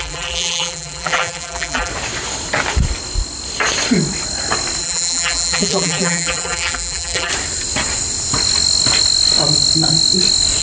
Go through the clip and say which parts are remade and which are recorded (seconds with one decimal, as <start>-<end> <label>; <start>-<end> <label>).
0.0-1.9 remade; 1.9-4.8 recorded; 4.8-7.3 remade; 7.3-10.6 recorded